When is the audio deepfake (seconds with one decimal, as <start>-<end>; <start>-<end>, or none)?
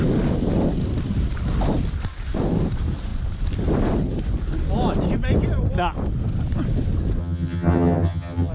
7.2-8.5